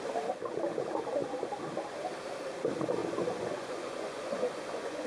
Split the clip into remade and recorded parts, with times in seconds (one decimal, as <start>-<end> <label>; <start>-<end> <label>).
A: 0.0-3.0 recorded; 3.0-5.1 remade